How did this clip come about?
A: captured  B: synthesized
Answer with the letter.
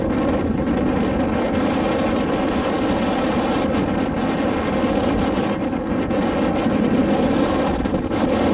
A